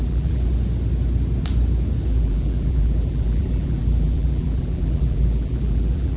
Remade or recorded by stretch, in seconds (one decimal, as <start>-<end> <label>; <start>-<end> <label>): 0.0-0.5 remade; 0.5-2.1 recorded; 2.1-6.2 remade